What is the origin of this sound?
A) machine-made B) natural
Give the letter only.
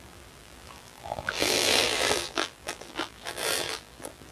A